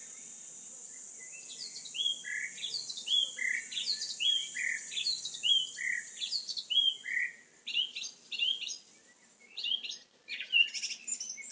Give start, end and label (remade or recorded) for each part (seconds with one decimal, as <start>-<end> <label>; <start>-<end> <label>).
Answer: 0.0-1.2 remade; 1.2-11.5 recorded